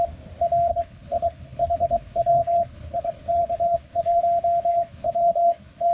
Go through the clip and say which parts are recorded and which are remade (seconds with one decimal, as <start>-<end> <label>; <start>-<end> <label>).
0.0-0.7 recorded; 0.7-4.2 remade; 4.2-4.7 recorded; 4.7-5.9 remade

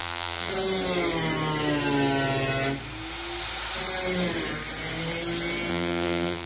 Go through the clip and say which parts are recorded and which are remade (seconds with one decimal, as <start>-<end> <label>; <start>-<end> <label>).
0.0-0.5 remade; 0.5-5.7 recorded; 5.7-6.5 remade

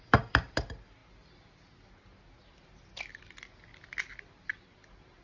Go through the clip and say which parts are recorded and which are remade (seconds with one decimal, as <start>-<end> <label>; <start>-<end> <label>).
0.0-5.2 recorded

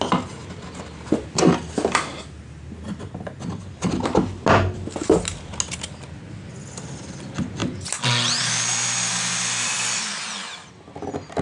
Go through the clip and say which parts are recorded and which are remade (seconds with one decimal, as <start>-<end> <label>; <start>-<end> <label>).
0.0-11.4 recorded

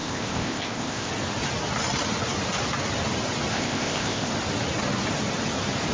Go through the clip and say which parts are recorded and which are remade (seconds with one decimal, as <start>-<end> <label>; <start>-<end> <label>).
0.0-1.1 remade; 1.1-3.5 recorded; 3.5-4.3 remade; 4.3-5.9 recorded